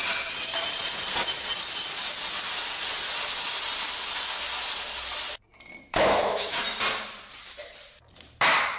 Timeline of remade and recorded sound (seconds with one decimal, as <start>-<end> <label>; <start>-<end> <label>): 0.0-5.9 recorded; 5.9-6.6 remade; 6.6-8.8 recorded